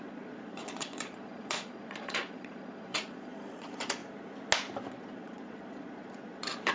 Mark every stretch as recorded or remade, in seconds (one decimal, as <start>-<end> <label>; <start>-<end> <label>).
0.0-4.0 remade; 4.0-4.9 recorded; 4.9-6.7 remade